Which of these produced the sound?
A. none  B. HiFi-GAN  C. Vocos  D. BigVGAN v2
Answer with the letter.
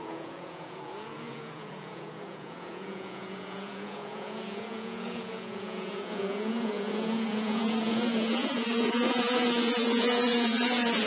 C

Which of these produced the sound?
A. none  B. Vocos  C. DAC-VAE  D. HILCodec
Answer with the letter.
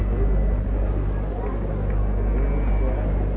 A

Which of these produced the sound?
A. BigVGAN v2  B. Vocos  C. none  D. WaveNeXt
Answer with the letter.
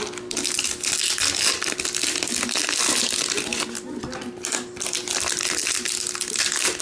C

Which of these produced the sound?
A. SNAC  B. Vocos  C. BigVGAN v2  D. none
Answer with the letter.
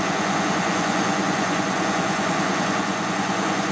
B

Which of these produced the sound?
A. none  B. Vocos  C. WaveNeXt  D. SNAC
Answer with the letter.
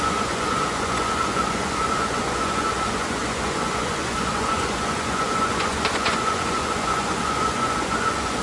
B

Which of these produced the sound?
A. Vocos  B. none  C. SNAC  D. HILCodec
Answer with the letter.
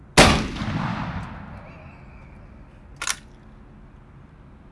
B